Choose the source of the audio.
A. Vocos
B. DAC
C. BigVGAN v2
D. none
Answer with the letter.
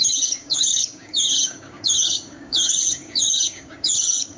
B